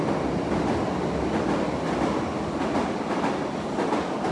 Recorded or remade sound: recorded